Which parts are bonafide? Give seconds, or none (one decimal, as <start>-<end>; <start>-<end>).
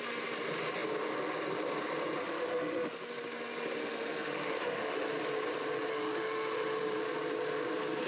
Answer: 0.0-2.2; 3.0-3.8; 5.1-5.9; 7.0-8.1